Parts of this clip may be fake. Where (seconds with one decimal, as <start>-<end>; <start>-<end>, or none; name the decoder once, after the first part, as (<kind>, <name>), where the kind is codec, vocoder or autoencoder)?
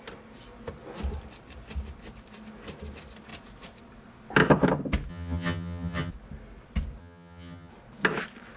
5.1-6.1 (vocoder, HiFi-GAN); 7.0-7.7